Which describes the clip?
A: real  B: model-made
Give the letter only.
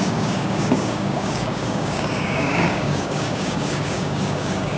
B